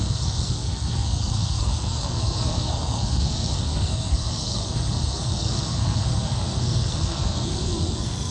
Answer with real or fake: fake